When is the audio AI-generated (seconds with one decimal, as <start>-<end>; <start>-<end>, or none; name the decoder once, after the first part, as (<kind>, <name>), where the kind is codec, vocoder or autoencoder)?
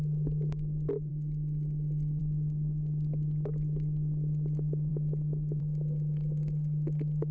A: none